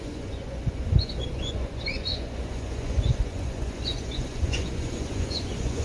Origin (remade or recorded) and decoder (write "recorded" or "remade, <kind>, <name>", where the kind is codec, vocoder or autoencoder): remade, vocoder, Vocos